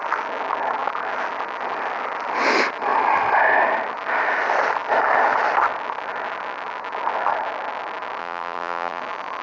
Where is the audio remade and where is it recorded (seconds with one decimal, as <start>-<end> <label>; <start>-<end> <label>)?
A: 0.0-8.2 recorded; 8.2-9.0 remade; 9.0-9.4 recorded

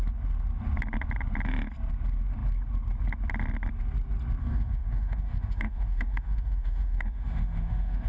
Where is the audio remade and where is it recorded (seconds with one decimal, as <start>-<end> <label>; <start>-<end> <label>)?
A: 0.0-4.4 recorded; 4.4-8.1 remade